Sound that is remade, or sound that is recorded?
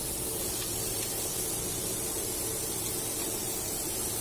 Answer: recorded